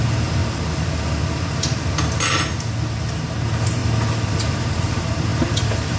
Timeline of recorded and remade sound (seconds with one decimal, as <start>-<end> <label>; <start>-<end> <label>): 0.0-0.4 remade; 0.4-3.0 recorded; 3.0-3.8 remade; 3.8-4.3 recorded; 4.3-6.0 remade